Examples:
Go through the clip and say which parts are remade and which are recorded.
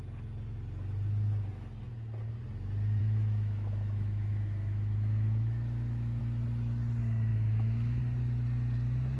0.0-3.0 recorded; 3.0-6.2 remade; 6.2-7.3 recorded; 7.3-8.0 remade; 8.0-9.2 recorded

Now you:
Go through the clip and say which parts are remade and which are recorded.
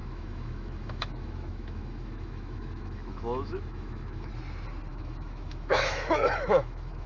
0.0-4.3 remade; 4.3-4.9 recorded; 4.9-7.1 remade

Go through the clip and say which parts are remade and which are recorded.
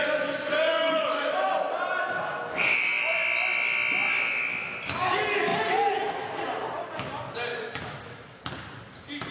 0.0-0.7 recorded; 0.7-1.5 remade; 1.5-7.5 recorded; 7.5-8.4 remade; 8.4-9.3 recorded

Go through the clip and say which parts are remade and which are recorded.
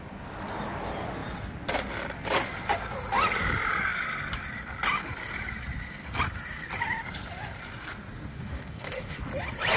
0.0-8.3 recorded; 8.3-9.2 remade; 9.2-9.8 recorded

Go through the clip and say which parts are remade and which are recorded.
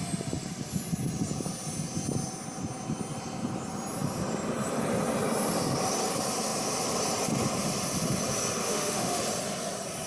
0.0-8.6 recorded; 8.6-9.2 remade; 9.2-10.1 recorded